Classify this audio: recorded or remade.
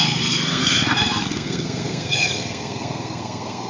remade